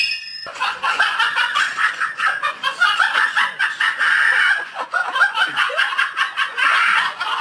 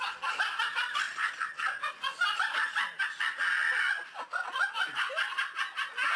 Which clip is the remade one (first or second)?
first